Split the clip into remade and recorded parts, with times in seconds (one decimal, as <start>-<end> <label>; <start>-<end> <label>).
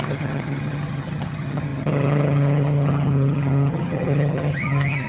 0.0-5.1 remade